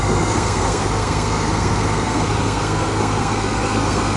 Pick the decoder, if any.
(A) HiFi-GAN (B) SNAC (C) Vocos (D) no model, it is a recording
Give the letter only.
B